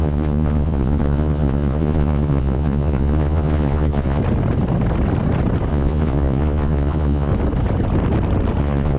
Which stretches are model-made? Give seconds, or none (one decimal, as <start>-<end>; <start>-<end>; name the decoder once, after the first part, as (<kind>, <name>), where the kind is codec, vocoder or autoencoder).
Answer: 0.0-4.2 (vocoder, Vocos); 5.7-7.3; 8.6-9.0